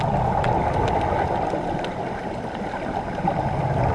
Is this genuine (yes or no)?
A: yes